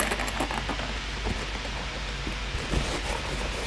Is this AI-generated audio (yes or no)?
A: no